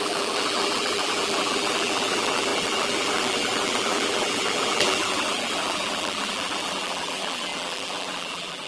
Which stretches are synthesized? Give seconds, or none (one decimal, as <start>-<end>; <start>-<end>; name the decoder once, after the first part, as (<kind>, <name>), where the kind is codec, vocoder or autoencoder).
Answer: 0.0-8.7 (vocoder, BigVGAN v2)